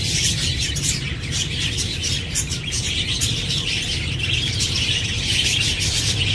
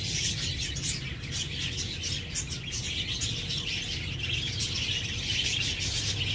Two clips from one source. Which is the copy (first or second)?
first